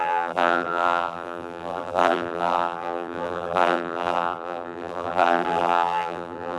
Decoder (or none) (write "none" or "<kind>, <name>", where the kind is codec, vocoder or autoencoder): vocoder, BigVGAN v2